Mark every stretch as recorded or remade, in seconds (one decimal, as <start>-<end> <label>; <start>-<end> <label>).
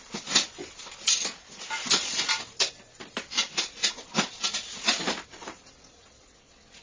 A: 0.0-6.8 recorded